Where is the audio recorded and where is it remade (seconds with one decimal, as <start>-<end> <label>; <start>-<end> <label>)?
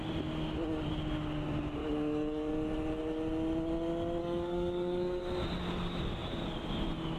0.0-1.8 recorded; 1.8-2.5 remade; 2.5-4.2 recorded; 4.2-5.2 remade; 5.2-7.2 recorded